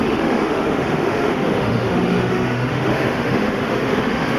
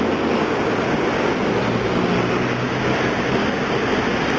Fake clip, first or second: first